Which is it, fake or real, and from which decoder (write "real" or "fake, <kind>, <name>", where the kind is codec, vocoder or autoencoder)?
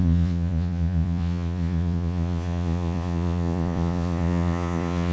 fake, vocoder, Vocos